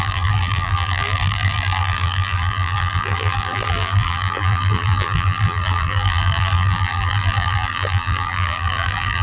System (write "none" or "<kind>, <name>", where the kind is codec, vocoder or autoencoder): vocoder, BigVGAN v2